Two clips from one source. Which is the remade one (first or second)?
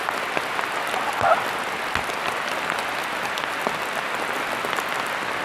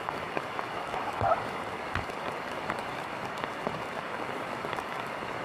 second